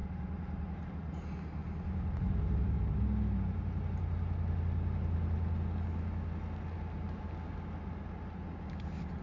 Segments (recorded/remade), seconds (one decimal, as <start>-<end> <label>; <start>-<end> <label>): 0.0-0.9 remade; 0.9-1.6 recorded; 1.6-2.8 remade; 2.8-9.2 recorded